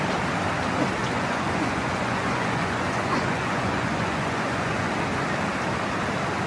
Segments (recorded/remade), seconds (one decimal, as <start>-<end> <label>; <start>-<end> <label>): 0.0-1.0 recorded; 1.0-4.9 remade; 4.9-6.5 recorded